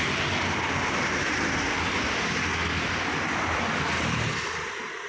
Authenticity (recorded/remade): recorded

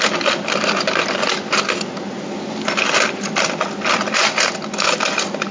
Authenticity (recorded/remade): recorded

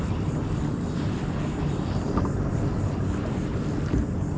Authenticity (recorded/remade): recorded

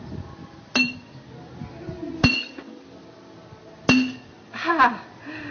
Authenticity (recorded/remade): recorded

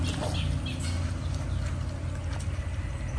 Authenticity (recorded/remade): recorded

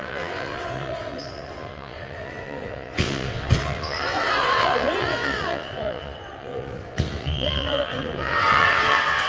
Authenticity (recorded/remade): remade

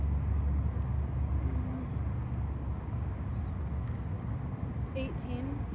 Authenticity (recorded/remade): recorded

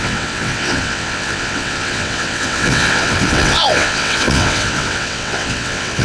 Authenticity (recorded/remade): remade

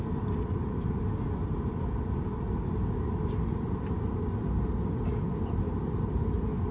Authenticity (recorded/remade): recorded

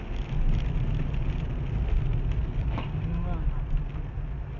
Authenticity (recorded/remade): recorded